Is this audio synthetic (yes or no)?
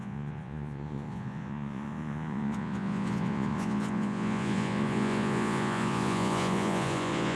yes